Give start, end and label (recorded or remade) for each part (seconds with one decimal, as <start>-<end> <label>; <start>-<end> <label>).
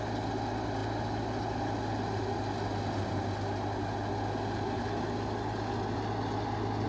0.0-6.9 recorded